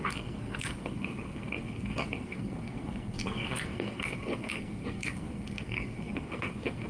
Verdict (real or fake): fake